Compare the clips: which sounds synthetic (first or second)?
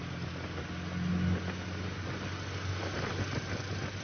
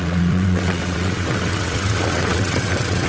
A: second